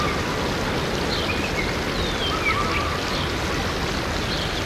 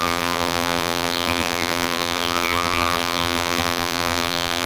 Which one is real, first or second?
first